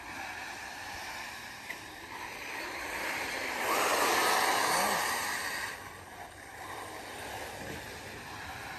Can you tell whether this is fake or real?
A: real